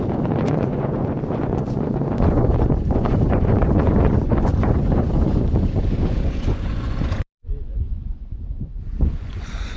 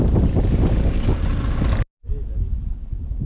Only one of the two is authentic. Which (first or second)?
second